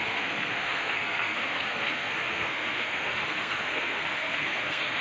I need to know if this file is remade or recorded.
remade